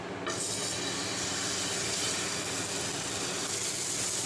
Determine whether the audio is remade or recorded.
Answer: recorded